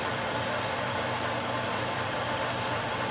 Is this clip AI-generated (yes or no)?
yes